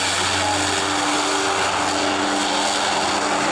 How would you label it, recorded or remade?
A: recorded